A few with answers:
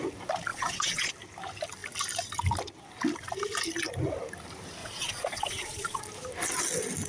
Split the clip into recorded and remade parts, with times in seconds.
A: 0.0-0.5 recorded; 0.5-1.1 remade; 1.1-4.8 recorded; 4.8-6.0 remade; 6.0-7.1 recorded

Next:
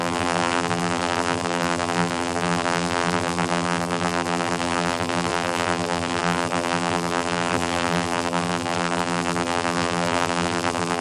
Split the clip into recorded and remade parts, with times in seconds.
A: 0.0-11.0 remade

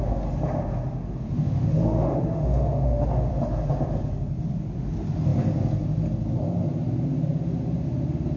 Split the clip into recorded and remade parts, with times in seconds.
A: 0.0-1.4 recorded; 1.4-3.3 remade; 3.3-8.4 recorded